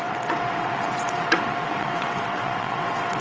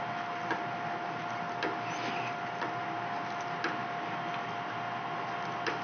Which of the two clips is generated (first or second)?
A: first